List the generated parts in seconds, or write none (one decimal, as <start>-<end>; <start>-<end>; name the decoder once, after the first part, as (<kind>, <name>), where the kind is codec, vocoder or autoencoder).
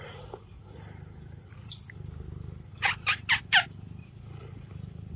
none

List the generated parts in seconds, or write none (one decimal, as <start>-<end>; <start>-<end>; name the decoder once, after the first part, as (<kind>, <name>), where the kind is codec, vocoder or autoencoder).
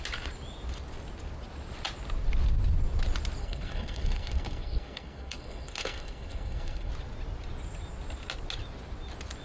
3.4-6.9 (codec, SNAC)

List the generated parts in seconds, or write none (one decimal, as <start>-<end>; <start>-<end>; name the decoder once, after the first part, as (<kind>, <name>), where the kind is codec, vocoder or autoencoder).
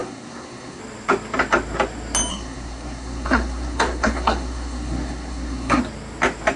0.0-0.8 (codec, SNAC); 2.3-5.8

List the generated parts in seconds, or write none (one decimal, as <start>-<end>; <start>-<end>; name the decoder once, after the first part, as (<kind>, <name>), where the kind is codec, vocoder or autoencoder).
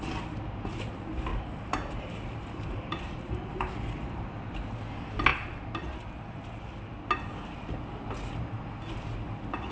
1.3-3.7 (vocoder, BigVGAN v2)